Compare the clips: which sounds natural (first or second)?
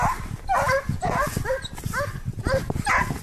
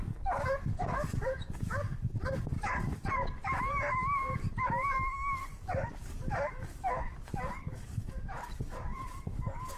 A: first